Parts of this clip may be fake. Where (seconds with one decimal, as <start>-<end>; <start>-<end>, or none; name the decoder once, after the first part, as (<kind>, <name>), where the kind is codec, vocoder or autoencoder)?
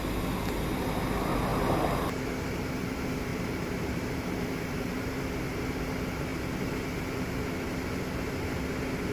3.3-5.2 (vocoder, BigVGAN v2)